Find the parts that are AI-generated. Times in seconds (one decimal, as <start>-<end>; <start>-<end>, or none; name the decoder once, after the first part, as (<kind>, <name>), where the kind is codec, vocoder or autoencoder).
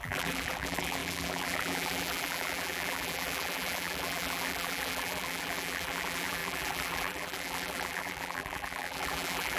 0.0-9.6 (vocoder, BigVGAN v2)